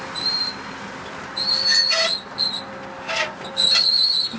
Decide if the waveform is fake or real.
real